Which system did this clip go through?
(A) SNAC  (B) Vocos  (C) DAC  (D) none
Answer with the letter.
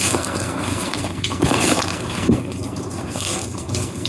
A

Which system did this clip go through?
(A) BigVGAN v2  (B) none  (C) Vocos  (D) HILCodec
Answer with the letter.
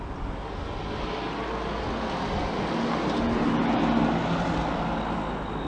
B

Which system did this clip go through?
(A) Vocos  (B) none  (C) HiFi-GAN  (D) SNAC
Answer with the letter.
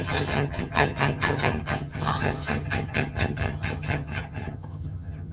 C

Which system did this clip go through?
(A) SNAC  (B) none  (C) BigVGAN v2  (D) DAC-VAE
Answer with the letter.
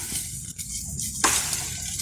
B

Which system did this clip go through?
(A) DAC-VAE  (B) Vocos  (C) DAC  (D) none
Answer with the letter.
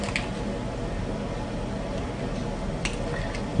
D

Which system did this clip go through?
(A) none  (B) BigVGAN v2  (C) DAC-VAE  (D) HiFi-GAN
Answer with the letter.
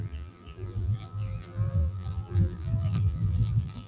B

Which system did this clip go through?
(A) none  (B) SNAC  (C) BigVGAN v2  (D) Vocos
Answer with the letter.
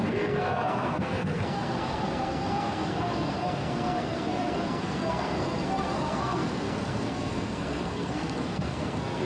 B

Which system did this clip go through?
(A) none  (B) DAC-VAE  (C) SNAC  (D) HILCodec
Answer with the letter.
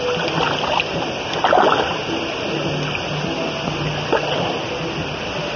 A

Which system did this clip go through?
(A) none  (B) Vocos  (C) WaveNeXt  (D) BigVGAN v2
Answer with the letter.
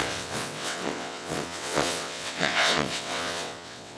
C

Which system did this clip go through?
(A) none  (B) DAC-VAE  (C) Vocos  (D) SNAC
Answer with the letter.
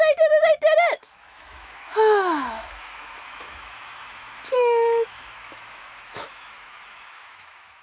B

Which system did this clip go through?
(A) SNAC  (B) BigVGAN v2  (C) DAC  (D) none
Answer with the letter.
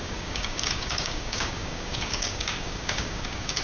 C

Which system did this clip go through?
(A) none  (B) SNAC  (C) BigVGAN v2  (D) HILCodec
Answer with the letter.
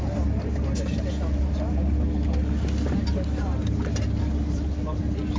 A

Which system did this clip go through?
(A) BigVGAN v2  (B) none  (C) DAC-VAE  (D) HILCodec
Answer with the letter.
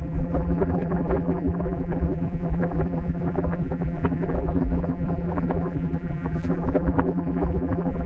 A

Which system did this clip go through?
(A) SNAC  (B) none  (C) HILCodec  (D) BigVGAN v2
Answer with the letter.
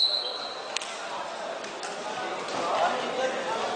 B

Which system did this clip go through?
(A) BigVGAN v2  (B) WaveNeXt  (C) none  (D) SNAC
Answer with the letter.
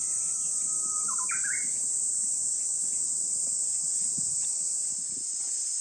A